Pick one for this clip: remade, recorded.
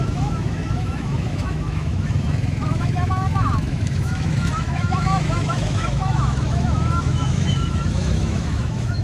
remade